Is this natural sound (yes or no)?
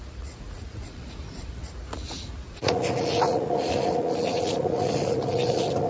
no